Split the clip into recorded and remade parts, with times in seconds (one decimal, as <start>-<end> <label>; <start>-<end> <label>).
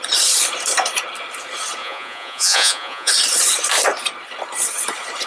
0.0-1.8 recorded; 1.8-3.1 remade; 3.1-5.3 recorded